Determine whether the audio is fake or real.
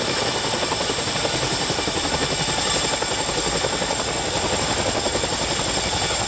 real